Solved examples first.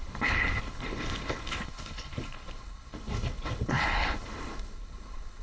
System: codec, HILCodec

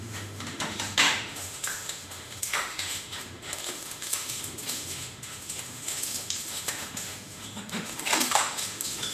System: autoencoder, DAC-VAE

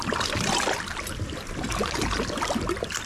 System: none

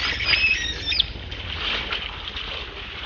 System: none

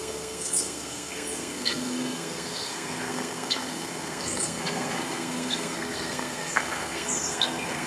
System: codec, SNAC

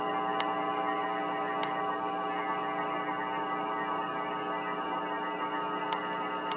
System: none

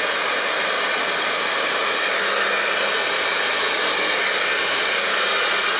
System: none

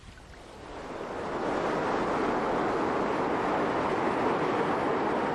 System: none